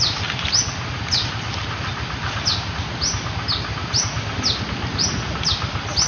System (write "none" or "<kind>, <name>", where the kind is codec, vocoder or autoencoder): none